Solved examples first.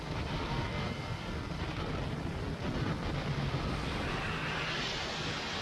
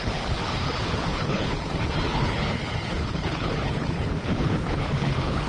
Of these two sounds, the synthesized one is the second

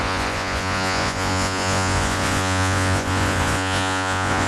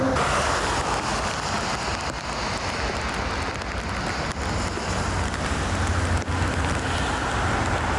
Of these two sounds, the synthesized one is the first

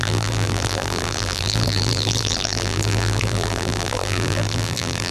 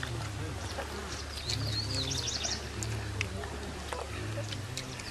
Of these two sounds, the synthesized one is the first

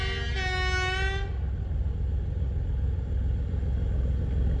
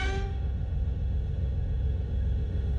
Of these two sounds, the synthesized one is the second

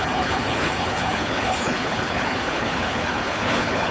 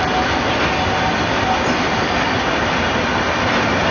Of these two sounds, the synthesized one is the first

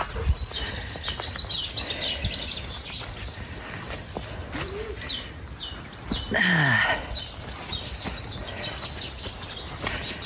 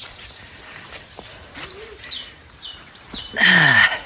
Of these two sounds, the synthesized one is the second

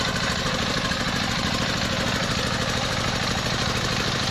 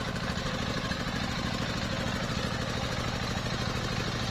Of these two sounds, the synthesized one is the first